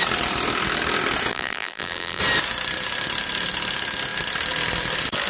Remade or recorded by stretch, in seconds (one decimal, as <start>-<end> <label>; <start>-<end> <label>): 0.0-1.3 recorded; 1.3-2.2 remade; 2.2-5.3 recorded